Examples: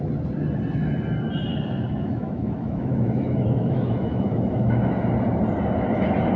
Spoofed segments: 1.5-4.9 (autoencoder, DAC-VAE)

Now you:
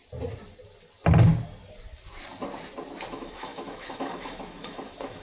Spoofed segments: 3.1-5.2 (autoencoder, DAC-VAE)

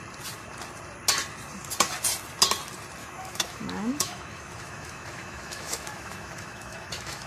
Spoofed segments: 3.0-7.3 (autoencoder, DAC-VAE)

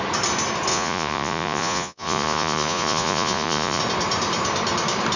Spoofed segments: 0.7-3.8 (vocoder, Vocos)